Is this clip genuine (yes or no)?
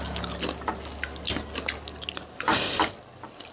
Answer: yes